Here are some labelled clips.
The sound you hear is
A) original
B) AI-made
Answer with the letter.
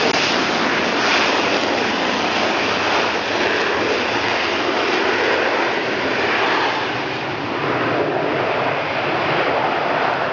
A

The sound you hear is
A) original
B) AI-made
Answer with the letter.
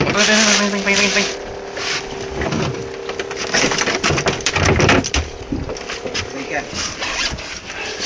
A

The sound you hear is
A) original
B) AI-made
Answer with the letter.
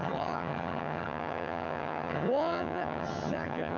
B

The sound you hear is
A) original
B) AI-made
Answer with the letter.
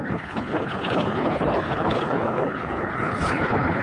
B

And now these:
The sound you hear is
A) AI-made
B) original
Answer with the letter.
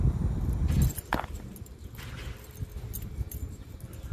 B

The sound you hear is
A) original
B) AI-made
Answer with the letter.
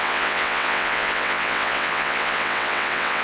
B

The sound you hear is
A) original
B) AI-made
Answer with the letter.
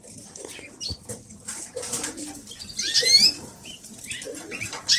A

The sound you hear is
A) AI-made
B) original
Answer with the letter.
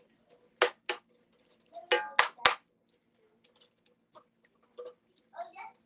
B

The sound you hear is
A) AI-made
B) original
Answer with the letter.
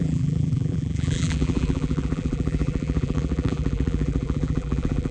A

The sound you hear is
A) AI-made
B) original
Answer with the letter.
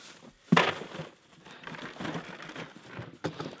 B